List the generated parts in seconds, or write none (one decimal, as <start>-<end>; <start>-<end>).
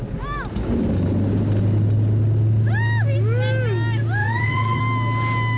4.2-4.8